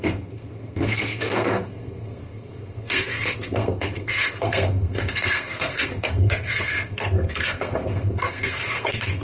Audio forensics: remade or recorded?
remade